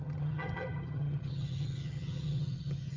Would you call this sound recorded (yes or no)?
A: no